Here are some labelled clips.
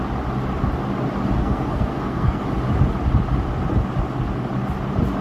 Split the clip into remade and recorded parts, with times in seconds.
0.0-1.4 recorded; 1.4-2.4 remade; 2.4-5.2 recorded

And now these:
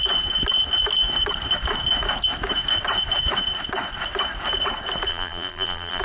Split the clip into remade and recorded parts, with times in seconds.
0.0-5.1 recorded; 5.1-6.0 remade